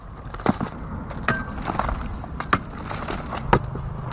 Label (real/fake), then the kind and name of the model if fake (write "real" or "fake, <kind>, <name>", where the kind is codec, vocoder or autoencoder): real